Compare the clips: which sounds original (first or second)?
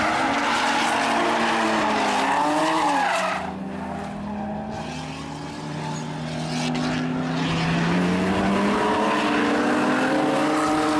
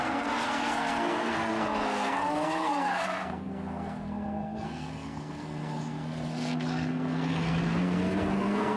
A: first